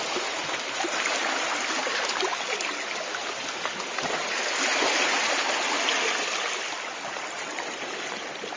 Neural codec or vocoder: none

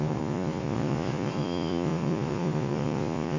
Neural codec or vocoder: vocoder, Vocos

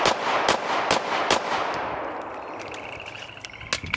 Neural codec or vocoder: none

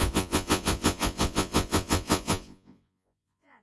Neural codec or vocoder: vocoder, Vocos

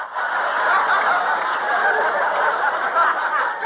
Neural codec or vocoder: none